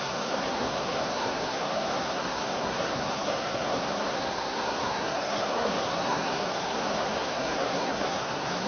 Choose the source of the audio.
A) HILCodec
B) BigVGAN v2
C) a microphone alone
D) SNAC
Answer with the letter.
D